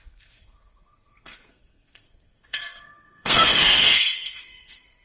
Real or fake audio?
fake